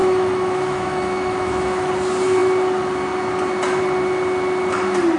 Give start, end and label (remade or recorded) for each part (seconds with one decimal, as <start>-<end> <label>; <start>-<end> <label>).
0.0-1.9 remade; 1.9-5.2 recorded